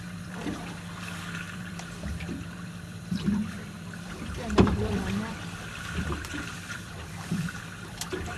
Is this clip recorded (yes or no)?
no